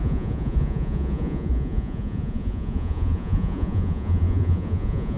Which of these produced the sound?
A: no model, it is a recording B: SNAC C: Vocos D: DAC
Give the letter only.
C